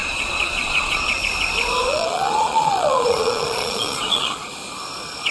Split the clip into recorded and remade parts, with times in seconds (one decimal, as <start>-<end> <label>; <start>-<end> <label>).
0.0-1.2 remade; 1.2-1.8 recorded; 1.8-4.5 remade; 4.5-5.3 recorded